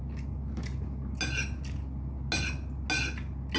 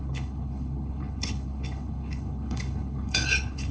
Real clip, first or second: first